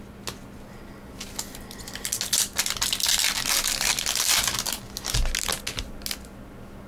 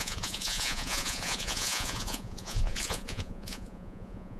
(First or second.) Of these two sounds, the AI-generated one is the second